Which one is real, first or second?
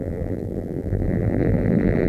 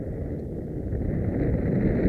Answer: second